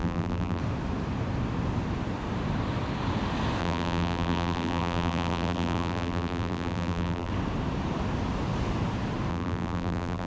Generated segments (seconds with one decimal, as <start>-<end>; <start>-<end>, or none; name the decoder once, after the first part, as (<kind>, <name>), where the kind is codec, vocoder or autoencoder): 0.0-0.6 (vocoder, BigVGAN v2); 3.6-7.3; 9.3-10.3